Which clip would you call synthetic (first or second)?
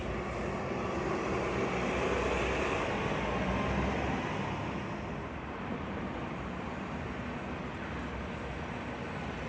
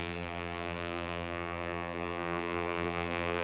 second